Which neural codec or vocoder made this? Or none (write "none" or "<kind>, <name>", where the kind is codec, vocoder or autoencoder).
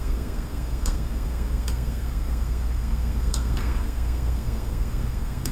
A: codec, SNAC